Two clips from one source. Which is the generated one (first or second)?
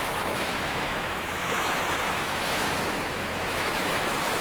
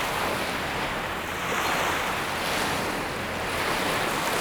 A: first